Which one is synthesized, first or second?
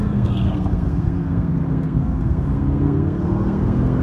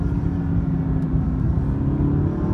first